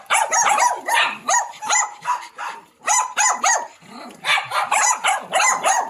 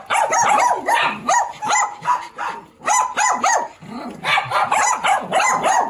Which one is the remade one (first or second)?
first